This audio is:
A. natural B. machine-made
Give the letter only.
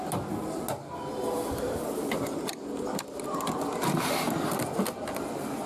A